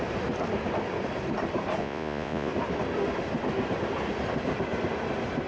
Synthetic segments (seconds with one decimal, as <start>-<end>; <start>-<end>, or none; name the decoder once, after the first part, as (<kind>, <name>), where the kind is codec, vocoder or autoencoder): 1.8-2.5 (vocoder, Vocos)